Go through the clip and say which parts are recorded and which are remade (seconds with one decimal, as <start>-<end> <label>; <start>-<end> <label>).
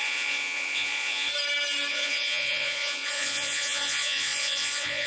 0.0-1.3 remade; 1.3-1.9 recorded; 1.9-5.1 remade